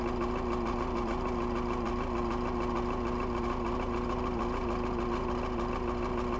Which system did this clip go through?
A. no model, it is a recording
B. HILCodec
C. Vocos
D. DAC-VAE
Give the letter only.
A